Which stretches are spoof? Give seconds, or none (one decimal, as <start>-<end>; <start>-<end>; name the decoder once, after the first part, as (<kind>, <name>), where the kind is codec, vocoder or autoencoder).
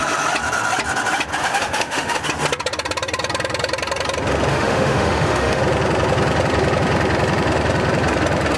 1.4-2.2 (autoencoder, DAC-VAE); 4.5-5.6